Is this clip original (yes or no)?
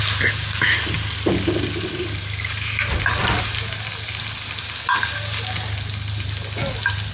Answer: yes